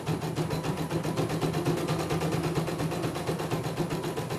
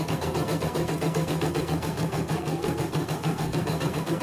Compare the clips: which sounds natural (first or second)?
first